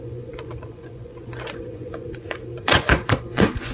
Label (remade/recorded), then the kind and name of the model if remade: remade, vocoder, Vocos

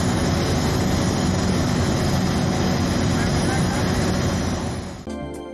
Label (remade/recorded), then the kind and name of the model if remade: recorded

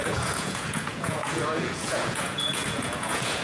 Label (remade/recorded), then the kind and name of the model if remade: remade, vocoder, Vocos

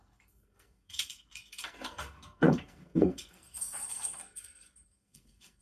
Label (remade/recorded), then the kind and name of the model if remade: remade, codec, SNAC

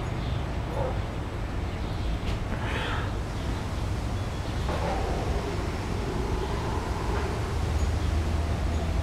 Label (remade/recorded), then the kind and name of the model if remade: recorded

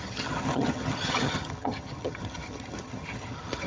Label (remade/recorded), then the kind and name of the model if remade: remade, vocoder, HiFi-GAN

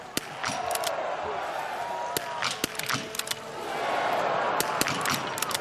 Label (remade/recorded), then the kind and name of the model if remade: recorded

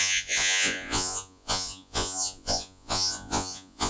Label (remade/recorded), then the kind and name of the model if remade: remade, vocoder, Vocos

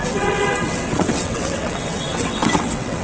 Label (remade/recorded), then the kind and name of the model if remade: remade, vocoder, WaveNeXt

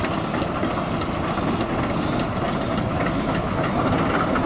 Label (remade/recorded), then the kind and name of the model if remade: recorded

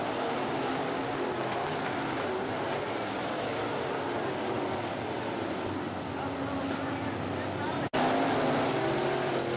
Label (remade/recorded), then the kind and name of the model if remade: recorded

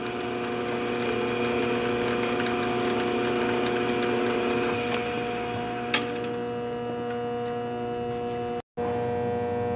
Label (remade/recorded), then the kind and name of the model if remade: recorded